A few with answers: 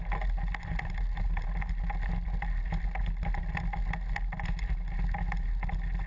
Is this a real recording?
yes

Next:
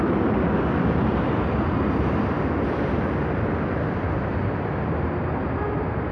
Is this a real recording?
yes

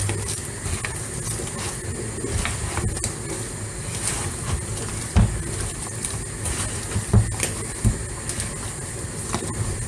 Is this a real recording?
yes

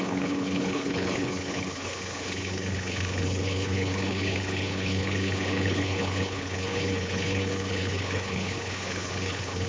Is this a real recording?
no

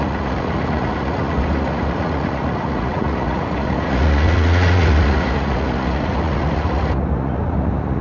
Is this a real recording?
no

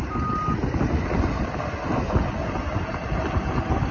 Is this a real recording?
yes